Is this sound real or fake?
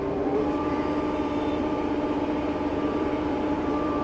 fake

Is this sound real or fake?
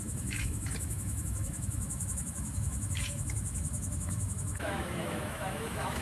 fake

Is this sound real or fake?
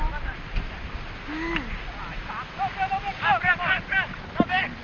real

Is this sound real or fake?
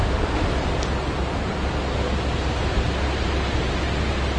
real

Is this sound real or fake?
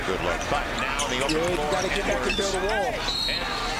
real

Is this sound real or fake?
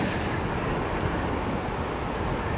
real